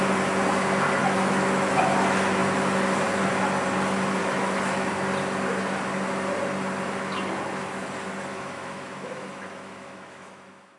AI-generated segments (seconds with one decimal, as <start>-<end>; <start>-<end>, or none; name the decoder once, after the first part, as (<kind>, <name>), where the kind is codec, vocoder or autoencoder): 1.0-1.8 (autoencoder, DAC-VAE); 4.2-4.9; 8.3-10.8